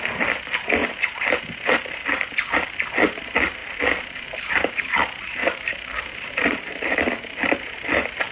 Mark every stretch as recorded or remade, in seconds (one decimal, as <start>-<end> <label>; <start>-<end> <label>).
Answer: 0.0-0.8 recorded; 0.8-1.4 remade; 1.4-5.4 recorded; 5.4-8.3 remade